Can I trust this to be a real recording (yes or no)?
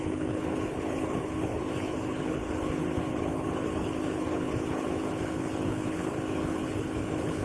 no